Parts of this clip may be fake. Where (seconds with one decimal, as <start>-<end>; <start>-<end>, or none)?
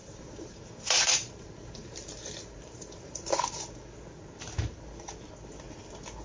0.0-3.7